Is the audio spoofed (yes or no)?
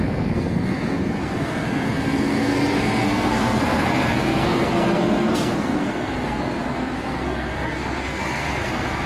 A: yes